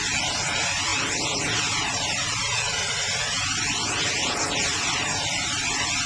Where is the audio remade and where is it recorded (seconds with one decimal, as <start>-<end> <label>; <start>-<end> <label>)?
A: 0.0-6.1 recorded